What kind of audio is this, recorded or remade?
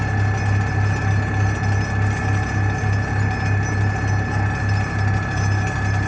recorded